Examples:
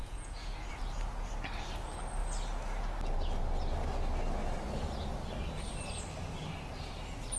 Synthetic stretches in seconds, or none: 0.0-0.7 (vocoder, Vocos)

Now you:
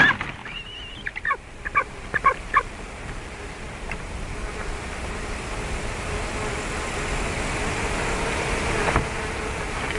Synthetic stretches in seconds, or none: 0.4-4.0 (vocoder, BigVGAN v2)

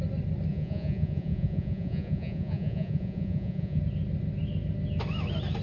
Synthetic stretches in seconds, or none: 0.5-3.8 (vocoder, Vocos)

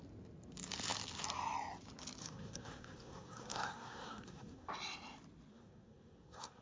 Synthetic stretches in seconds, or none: 2.2-4.7 (codec, SNAC); 5.5-6.6